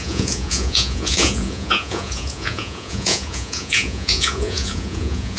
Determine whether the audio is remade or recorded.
remade